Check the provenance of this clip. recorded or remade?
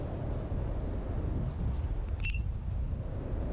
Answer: recorded